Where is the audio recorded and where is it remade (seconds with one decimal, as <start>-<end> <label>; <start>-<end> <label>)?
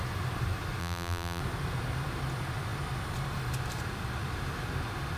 0.0-0.8 recorded; 0.8-1.4 remade; 1.4-5.2 recorded